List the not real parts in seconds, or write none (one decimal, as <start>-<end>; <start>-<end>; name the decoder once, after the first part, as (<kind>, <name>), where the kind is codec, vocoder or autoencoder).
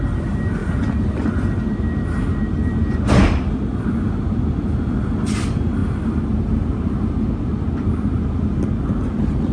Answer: 0.6-1.8 (vocoder, BigVGAN v2); 5.8-6.6